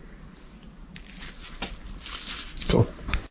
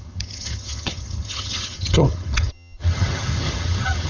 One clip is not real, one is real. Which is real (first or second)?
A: first